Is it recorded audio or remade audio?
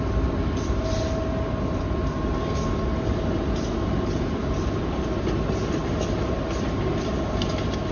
recorded